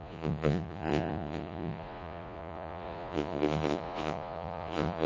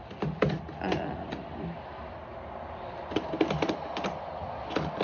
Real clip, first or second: second